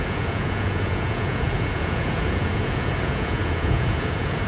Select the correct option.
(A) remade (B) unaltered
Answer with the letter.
A